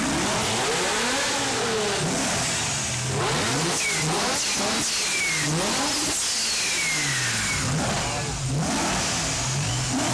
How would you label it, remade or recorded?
recorded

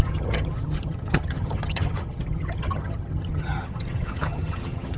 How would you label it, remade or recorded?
remade